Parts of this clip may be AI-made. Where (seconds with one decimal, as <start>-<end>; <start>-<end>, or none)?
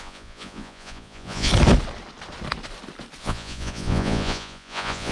0.0-1.5; 3.2-5.1